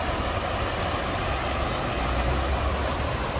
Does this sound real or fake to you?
real